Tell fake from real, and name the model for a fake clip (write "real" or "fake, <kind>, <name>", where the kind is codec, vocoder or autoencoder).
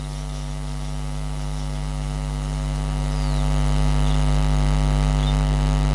real